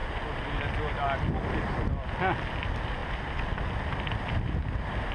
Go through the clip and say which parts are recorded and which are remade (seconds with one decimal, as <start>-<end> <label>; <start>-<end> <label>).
0.0-5.1 recorded

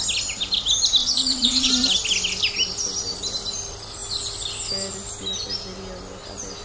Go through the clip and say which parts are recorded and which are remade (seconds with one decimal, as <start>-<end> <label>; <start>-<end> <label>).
0.0-1.0 recorded; 1.0-1.7 remade; 1.7-6.6 recorded